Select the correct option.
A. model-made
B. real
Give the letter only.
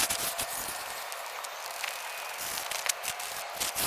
B